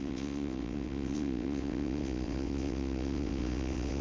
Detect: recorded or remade remade